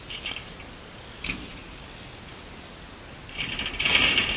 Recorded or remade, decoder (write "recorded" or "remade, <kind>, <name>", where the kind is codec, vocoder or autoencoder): recorded